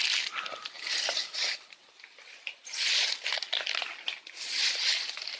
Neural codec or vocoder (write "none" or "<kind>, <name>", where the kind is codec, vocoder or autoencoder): none